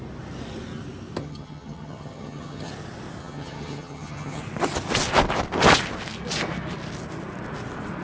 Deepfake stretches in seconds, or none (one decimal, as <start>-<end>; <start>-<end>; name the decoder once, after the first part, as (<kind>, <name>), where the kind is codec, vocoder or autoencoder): 1.2-2.7 (vocoder, HiFi-GAN); 3.2-4.4